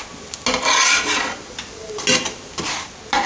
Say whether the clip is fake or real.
real